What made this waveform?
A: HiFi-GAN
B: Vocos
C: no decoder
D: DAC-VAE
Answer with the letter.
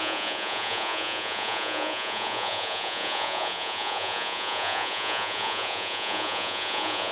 B